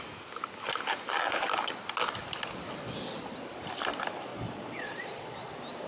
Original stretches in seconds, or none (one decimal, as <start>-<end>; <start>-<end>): 0.0-4.3; 5.5-5.9